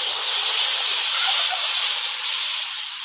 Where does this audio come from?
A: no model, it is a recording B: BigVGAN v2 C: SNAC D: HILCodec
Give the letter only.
B